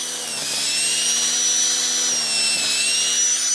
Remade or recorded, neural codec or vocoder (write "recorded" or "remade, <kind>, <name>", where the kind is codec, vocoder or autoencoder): recorded